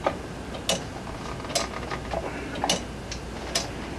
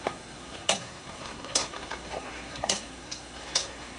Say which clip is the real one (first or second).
first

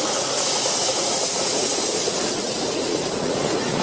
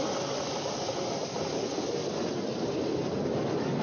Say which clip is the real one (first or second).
second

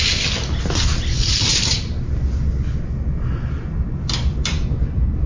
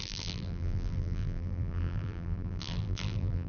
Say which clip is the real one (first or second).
first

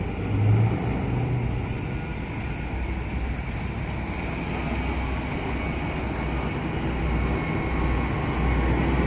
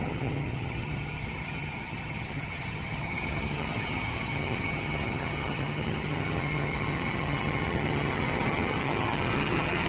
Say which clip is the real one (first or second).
first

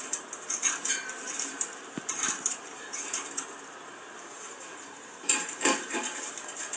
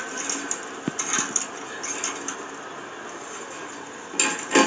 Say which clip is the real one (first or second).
second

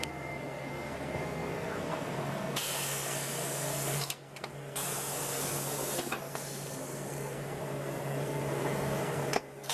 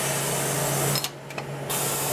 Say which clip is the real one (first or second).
second